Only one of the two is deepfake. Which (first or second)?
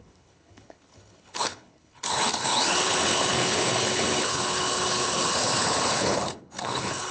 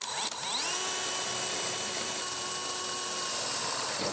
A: first